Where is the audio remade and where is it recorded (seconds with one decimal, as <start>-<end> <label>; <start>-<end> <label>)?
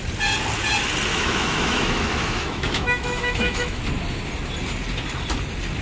0.0-1.1 recorded; 1.1-3.8 remade; 3.8-5.8 recorded